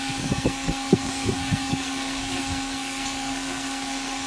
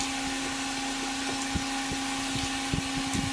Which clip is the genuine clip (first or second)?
second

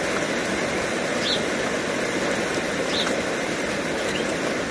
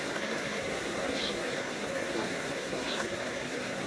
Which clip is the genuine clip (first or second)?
first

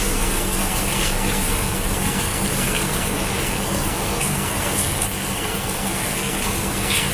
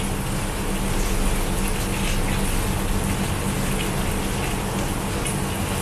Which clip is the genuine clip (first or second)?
second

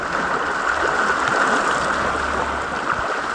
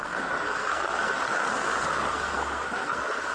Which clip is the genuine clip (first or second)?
first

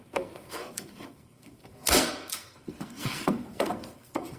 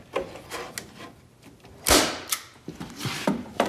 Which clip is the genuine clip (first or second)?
second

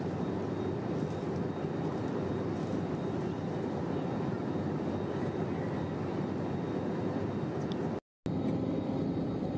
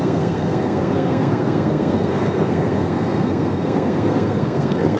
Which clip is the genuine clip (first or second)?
first